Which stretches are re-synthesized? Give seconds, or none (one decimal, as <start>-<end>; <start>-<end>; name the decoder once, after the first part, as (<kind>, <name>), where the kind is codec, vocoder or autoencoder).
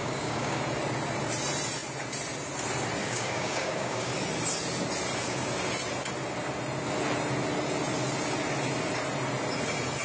0.0-0.6 (codec, DAC); 3.0-4.1